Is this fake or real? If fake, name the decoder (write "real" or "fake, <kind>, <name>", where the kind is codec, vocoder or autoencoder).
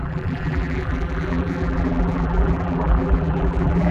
fake, vocoder, BigVGAN v2